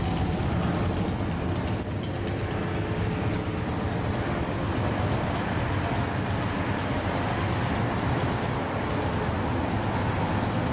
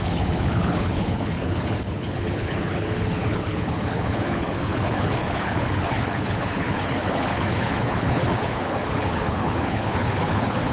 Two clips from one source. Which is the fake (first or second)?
second